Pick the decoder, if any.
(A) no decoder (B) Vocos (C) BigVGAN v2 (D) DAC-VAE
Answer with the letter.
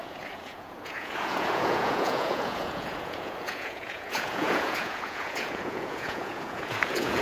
B